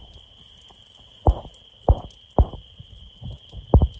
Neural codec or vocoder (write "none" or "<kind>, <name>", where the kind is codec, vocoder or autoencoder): none